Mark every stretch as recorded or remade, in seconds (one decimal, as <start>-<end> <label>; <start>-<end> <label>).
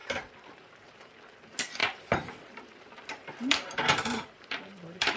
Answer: 0.0-1.1 remade; 1.1-1.8 recorded; 1.8-5.2 remade